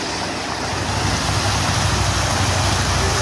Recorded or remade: recorded